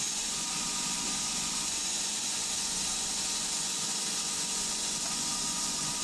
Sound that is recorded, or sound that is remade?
remade